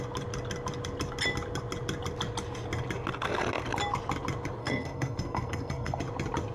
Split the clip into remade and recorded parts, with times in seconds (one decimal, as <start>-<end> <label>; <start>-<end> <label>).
0.0-4.6 recorded; 4.6-6.0 remade; 6.0-6.5 recorded

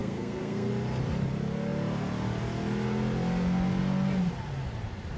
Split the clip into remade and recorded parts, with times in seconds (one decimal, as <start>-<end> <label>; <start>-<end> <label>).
0.0-0.7 remade; 0.7-5.2 recorded

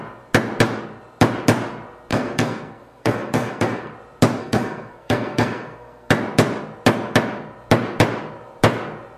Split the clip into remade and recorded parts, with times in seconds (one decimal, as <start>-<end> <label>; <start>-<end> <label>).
0.0-2.1 recorded; 2.1-3.9 remade; 3.9-4.4 recorded; 4.4-6.1 remade; 6.1-9.2 recorded

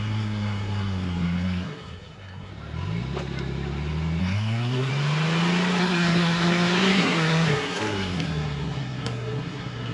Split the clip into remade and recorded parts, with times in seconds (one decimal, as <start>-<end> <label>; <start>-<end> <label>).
0.0-2.5 remade; 2.5-4.2 recorded; 4.2-4.9 remade; 4.9-5.8 recorded; 5.8-9.9 remade

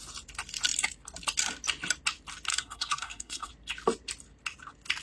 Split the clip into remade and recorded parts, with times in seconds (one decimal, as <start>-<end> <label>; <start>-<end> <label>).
0.0-2.5 recorded; 2.5-3.5 remade; 3.5-5.0 recorded

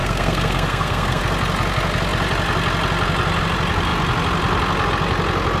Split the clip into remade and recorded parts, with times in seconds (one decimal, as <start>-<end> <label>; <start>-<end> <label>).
0.0-1.2 remade; 1.2-5.6 recorded